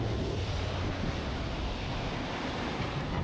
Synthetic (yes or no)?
no